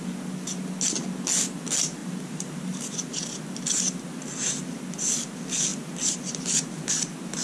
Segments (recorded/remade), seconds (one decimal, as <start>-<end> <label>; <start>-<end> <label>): 0.0-2.0 recorded; 2.0-3.2 remade; 3.2-7.4 recorded